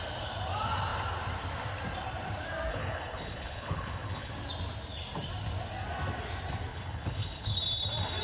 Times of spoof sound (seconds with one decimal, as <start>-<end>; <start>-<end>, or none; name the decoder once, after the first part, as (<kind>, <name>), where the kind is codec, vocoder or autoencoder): 2.7-4.3 (codec, HILCodec); 6.7-7.6